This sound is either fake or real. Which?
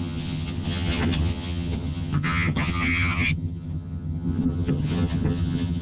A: fake